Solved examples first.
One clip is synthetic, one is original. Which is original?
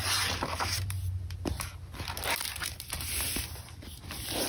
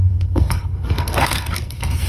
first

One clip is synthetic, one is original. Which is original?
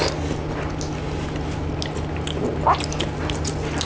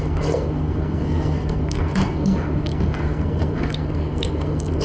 first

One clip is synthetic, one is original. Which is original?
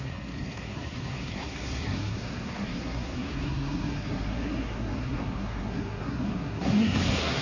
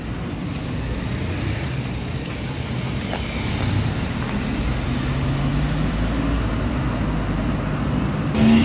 second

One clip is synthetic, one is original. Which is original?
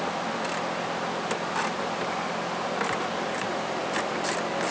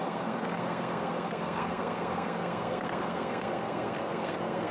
first